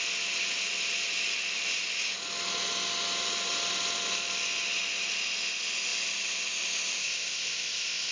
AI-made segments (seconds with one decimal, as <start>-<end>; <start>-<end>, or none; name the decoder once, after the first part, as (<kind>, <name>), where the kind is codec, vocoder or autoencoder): 7.0-8.1 (codec, ZipCodec)